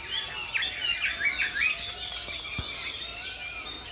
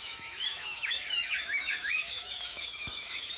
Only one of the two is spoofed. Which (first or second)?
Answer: second